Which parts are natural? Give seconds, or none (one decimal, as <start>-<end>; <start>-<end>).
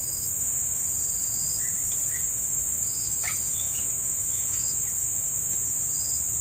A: 0.8-2.1; 5.6-6.4